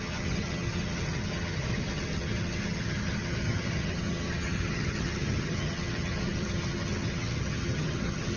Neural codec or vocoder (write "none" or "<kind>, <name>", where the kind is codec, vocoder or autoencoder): vocoder, HiFi-GAN